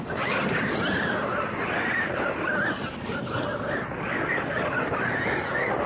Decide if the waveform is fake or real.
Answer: real